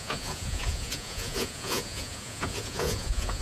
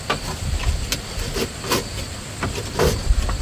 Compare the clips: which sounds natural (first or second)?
second